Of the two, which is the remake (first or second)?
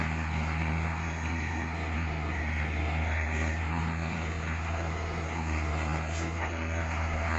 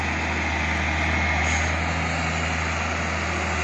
first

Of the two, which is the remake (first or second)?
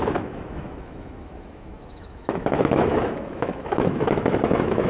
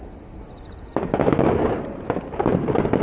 first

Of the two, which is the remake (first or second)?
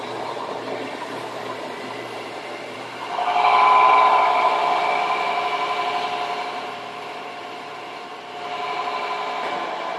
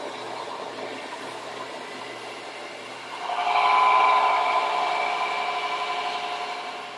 first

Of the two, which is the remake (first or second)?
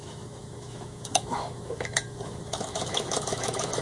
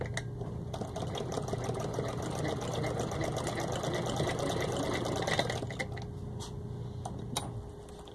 first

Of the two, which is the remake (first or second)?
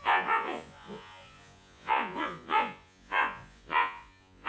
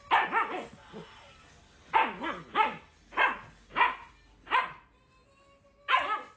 first